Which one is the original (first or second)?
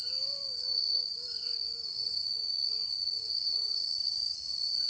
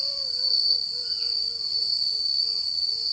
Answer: second